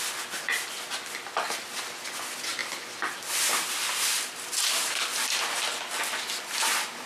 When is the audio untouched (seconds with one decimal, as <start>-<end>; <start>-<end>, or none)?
0.0-2.6; 5.5-7.1